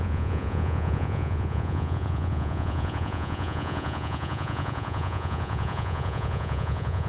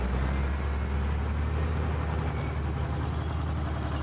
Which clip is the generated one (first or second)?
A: first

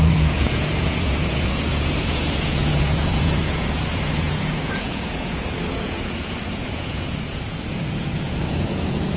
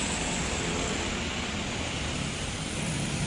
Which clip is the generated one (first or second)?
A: first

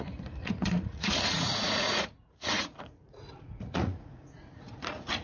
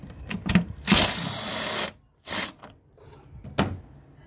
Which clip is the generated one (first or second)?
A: first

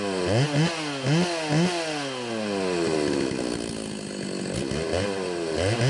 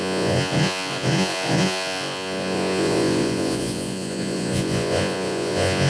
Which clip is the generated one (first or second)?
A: second